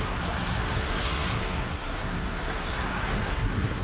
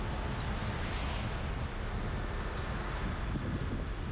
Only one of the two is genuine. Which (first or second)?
second